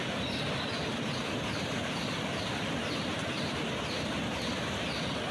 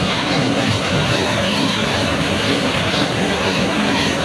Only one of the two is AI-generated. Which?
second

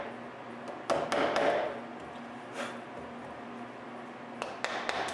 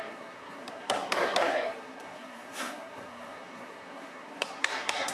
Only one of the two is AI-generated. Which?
second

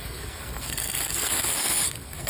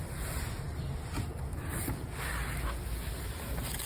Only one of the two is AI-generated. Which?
first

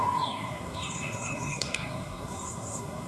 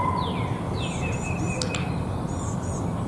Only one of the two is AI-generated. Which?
first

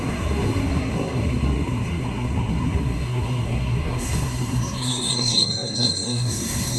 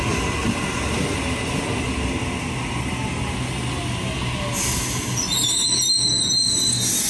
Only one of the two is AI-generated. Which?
first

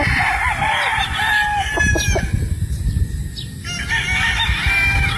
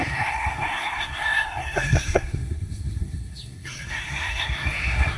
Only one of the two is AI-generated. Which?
second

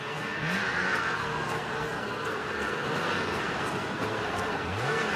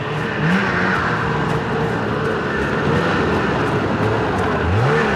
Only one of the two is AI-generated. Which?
first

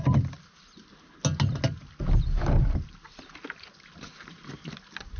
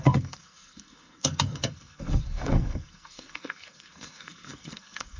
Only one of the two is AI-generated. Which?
second